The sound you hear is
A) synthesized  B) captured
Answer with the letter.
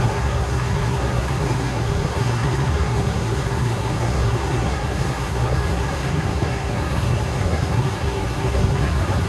A